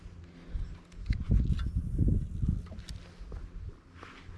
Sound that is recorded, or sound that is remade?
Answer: recorded